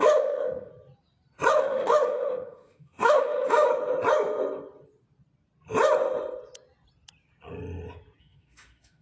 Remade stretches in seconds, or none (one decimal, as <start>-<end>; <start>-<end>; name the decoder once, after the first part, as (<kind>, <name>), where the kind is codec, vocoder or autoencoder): 0.0-0.7 (autoencoder, DAC-VAE); 1.5-3.7; 8.2-9.0

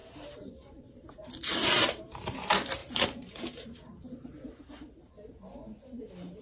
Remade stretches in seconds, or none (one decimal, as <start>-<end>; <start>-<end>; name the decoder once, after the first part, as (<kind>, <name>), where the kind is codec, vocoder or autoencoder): 0.0-2.0 (vocoder, BigVGAN v2); 2.8-5.1

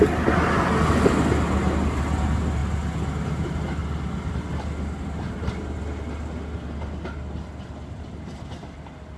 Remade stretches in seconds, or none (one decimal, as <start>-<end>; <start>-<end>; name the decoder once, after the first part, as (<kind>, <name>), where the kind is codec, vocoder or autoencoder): none

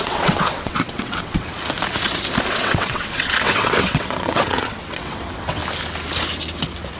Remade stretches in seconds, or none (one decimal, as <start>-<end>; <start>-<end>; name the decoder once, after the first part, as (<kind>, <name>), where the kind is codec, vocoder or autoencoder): 0.0-1.4 (vocoder, WaveNeXt); 2.5-5.6

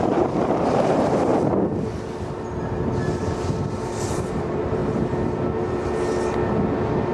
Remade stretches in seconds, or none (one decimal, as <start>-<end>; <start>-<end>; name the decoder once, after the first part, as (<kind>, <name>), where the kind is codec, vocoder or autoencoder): 0.0-1.3 (vocoder, BigVGAN v2); 4.1-4.8

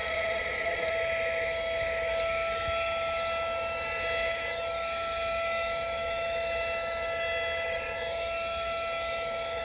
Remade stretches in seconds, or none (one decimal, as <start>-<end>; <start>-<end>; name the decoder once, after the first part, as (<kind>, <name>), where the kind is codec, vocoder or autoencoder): 0.0-0.9 (vocoder, Vocos)

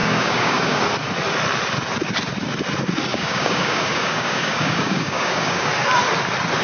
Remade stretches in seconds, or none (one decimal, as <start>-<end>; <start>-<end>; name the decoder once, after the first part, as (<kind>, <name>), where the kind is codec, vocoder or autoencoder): 0.0-0.8 (codec, DAC); 3.1-5.7